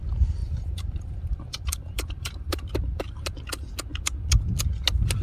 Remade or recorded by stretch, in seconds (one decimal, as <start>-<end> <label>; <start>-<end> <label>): 0.0-0.4 recorded; 0.4-3.1 remade; 3.1-5.2 recorded